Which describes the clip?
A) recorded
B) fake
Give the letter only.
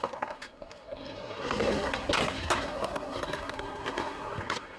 B